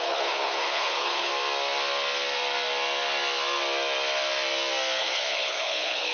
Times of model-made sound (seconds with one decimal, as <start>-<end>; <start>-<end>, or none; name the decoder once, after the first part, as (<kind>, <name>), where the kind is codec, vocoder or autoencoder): 0.0-1.3 (codec, HILCodec); 5.0-6.1